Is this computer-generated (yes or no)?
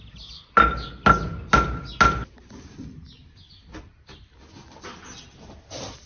no